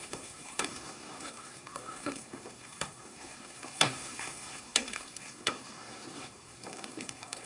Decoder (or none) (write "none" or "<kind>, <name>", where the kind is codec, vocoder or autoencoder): codec, SNAC